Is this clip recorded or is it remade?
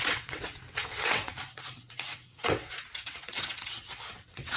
remade